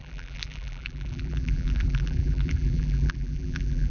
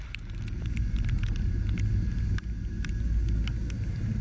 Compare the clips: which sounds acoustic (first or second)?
second